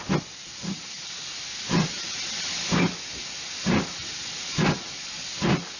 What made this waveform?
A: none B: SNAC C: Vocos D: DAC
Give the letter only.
A